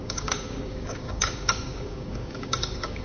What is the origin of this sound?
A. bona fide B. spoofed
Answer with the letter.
B